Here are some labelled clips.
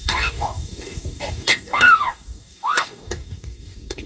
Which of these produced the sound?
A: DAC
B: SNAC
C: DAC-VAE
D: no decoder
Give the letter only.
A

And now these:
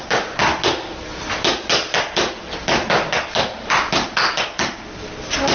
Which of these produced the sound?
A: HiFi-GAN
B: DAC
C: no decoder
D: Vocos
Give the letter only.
C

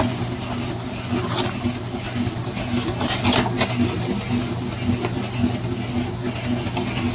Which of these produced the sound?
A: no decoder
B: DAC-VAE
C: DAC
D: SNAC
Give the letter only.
A